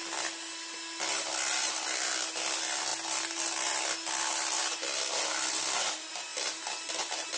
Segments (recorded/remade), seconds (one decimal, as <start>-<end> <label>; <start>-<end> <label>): 0.0-7.4 recorded